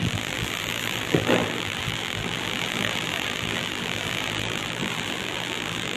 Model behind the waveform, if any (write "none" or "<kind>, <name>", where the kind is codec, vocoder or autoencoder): vocoder, BigVGAN v2